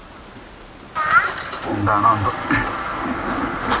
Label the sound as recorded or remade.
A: recorded